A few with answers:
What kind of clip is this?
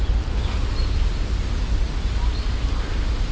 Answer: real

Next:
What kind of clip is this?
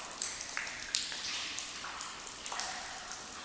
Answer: real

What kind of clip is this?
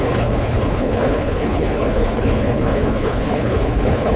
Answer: fake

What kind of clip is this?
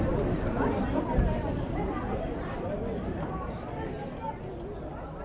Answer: fake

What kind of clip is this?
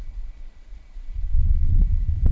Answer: fake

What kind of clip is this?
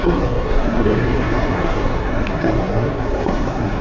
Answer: fake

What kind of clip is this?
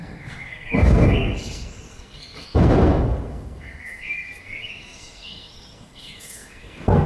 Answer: fake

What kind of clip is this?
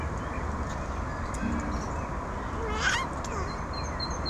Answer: real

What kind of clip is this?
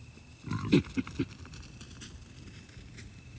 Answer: real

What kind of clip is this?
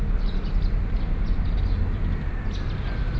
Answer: real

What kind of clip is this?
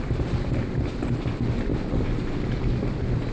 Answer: real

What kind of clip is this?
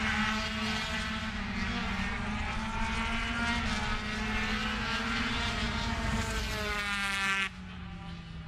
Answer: real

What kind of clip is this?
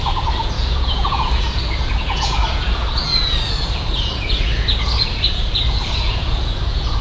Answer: fake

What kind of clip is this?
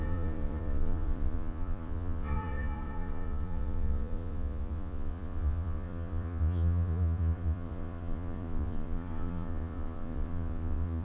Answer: fake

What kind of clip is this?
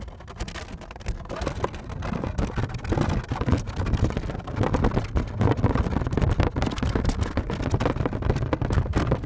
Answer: real